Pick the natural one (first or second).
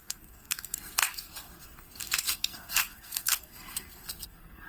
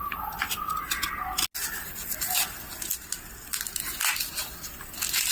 second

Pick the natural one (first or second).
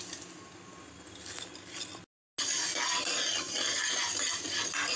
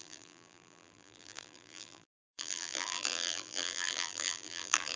first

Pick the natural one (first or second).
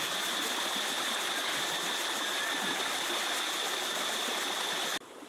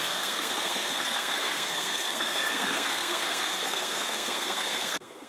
first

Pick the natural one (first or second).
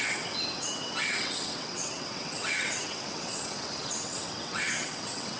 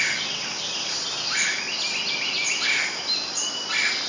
second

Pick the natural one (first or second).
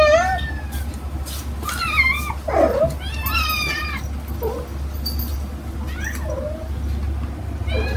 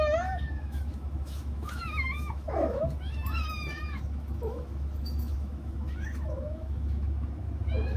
first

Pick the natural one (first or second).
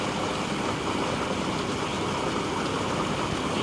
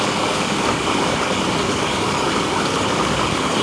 first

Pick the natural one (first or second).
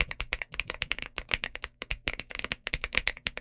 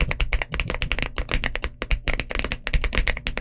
second